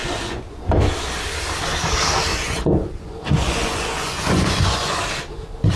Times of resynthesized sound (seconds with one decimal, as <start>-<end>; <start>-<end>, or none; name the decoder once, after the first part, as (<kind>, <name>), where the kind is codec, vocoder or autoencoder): 0.0-0.6 (vocoder, Vocos); 2.3-5.0